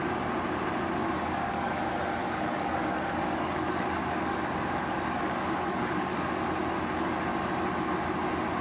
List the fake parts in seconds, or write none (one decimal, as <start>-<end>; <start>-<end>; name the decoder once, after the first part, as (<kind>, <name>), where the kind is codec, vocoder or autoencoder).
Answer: 1.0-1.8 (codec, DAC); 2.2-6.5